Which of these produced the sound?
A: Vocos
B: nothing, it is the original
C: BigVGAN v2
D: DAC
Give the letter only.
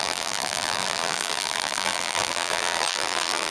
C